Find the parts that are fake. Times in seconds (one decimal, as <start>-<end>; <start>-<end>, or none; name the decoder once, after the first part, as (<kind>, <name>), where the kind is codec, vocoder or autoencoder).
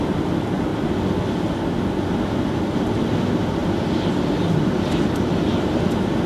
3.6-4.9 (vocoder, BigVGAN v2)